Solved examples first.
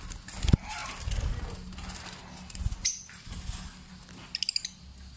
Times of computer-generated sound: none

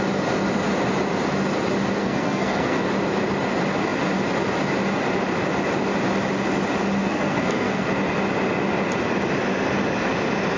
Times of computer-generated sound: 2.0-2.8 (codec, SNAC); 7.0-7.9